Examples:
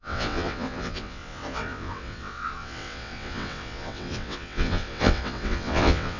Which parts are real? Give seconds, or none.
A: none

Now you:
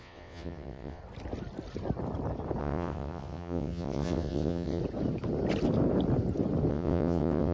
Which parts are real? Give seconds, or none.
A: 1.0-2.6; 4.8-6.7

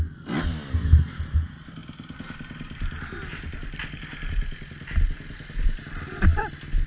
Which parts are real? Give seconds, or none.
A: 0.0-6.9

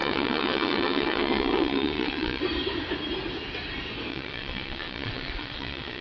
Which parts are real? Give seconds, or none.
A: 2.4-4.1

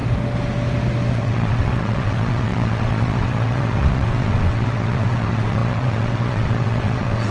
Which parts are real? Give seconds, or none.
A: 0.0-1.1